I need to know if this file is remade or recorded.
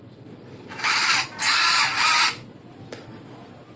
remade